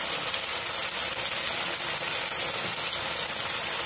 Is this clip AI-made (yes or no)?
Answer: no